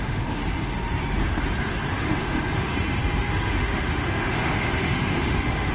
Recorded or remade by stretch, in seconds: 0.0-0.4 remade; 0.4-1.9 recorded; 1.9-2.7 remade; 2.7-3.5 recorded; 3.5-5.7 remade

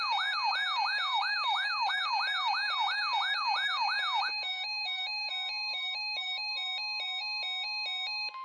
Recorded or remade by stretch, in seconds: 0.0-1.1 recorded; 1.1-1.9 remade; 1.9-4.3 recorded; 4.3-5.3 remade; 5.3-5.7 recorded; 5.7-6.5 remade; 6.5-8.4 recorded